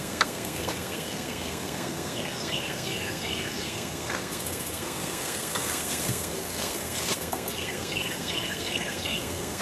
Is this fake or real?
fake